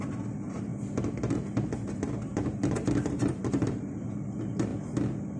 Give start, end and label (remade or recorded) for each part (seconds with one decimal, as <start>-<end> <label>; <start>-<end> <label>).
0.0-0.7 remade; 0.7-1.9 recorded; 1.9-4.7 remade; 4.7-5.4 recorded